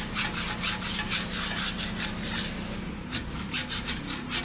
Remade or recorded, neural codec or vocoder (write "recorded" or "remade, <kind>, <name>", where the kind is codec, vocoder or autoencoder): remade, vocoder, BigVGAN v2